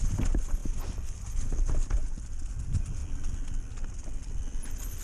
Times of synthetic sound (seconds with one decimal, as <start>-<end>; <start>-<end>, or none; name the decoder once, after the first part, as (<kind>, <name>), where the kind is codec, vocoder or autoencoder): none